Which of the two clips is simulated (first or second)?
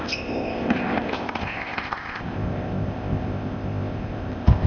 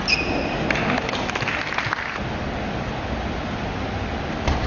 first